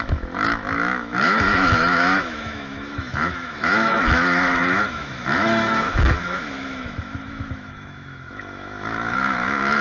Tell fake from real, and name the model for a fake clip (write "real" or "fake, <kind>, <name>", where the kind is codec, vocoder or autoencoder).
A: fake, autoencoder, DAC-VAE